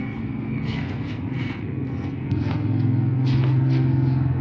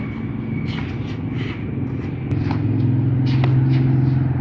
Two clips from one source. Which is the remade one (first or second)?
first